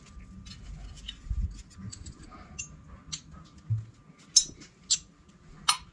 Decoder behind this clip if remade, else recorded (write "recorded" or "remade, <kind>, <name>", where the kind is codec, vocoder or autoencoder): recorded